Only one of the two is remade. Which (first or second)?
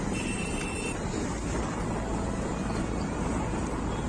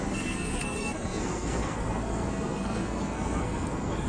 second